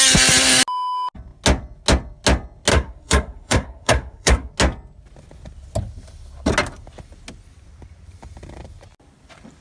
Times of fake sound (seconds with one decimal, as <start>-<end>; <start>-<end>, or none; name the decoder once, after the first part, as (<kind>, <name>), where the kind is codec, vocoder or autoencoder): 2.7-4.5 (codec, SNAC)